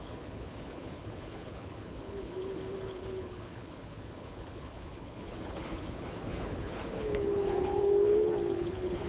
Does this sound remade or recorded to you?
remade